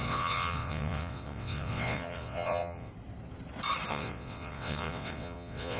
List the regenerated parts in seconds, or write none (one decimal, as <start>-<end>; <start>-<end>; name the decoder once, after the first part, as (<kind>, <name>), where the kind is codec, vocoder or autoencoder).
0.0-2.9 (vocoder, WaveNeXt); 3.9-5.8